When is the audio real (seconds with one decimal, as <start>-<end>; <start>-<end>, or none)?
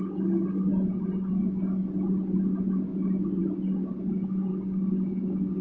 0.0-4.5